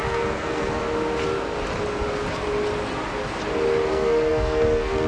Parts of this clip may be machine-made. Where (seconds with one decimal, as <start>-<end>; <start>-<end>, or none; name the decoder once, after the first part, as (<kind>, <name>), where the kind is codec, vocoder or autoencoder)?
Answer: 0.0-0.8 (codec, SNAC); 3.9-5.1